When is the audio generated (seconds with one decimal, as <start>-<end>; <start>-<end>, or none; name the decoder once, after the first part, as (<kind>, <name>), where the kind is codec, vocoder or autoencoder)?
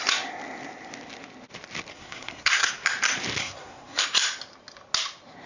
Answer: 1.9-2.7 (codec, SNAC); 3.4-4.0